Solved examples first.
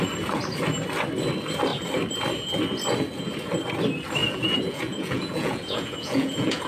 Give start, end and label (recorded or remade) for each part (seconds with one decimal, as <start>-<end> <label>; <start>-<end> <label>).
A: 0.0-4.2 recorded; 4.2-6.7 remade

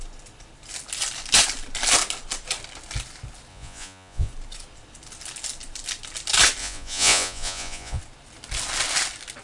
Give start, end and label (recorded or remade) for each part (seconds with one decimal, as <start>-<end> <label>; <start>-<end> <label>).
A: 0.0-3.5 recorded; 3.5-4.3 remade; 4.3-6.6 recorded; 6.6-8.0 remade; 8.0-9.4 recorded

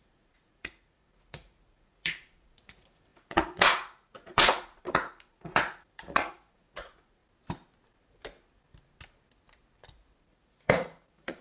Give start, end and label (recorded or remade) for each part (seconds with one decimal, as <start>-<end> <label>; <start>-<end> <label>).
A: 0.0-7.2 remade; 7.2-10.2 recorded; 10.2-11.4 remade